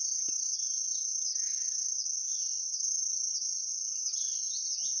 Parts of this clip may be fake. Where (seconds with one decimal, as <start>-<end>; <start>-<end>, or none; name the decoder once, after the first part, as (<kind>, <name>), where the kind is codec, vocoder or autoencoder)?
1.3-3.0 (codec, DAC)